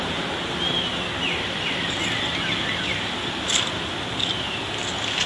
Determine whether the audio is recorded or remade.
recorded